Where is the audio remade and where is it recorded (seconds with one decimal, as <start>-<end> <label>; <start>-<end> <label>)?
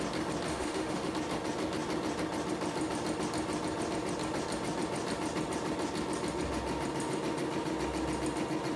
0.0-0.5 recorded; 0.5-1.1 remade; 1.1-8.8 recorded